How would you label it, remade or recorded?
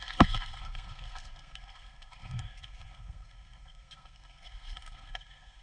remade